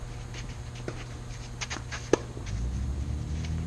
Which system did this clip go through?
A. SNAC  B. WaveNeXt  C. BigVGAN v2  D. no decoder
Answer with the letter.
D